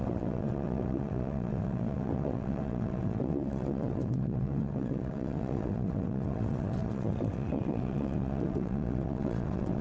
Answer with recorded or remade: remade